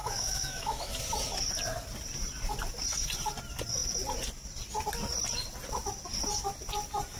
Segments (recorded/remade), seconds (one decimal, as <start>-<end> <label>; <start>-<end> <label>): 0.0-1.0 remade; 1.0-7.2 recorded